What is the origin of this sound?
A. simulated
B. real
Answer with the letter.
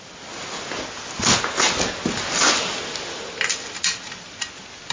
B